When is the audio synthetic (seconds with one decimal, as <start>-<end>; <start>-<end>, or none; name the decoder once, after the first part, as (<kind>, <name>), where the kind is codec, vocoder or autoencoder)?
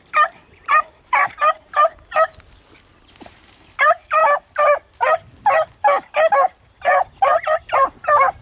0.0-1.8 (vocoder, BigVGAN v2); 3.2-4.2; 7.1-8.4